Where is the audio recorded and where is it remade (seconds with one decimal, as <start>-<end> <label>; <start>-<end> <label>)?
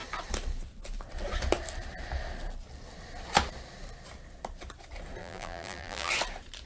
0.0-5.2 recorded; 5.2-6.1 remade; 6.1-6.7 recorded